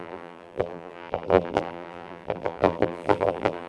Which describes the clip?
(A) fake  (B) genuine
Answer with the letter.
A